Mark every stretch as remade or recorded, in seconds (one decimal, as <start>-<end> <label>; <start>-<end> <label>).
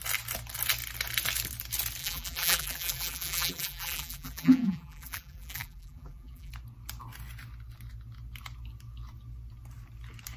0.0-2.0 recorded; 2.0-6.5 remade; 6.5-10.4 recorded